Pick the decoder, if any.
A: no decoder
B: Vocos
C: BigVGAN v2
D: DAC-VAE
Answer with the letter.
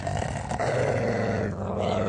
A